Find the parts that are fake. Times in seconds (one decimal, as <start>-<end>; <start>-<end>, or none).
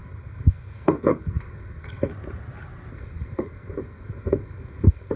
0.0-2.1; 2.9-5.2